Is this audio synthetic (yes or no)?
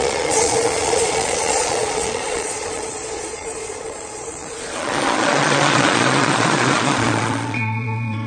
yes